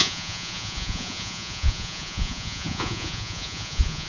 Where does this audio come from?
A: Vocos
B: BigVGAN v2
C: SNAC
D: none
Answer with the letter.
A